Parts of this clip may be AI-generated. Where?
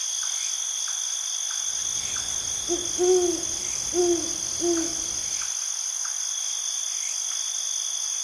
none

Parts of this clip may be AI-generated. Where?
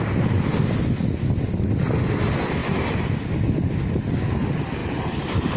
2.6-3.1 (vocoder, BigVGAN v2); 4.8-5.6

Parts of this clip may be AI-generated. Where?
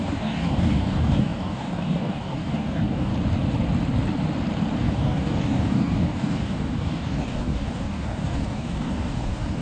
0.0-3.1 (codec, DAC); 4.8-9.6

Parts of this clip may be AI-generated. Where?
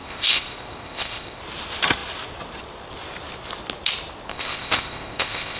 0.0-1.4 (codec, ZipCodec); 4.3-5.6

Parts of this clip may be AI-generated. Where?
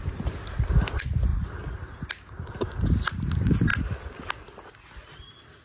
none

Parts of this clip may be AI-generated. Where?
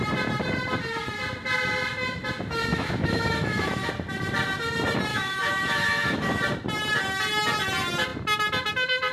2.7-3.9 (autoencoder, DAC-VAE); 5.1-6.4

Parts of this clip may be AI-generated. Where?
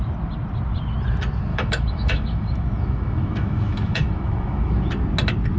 1.5-4.9 (autoencoder, DAC-VAE)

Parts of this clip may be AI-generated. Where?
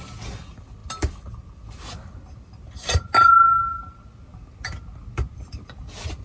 none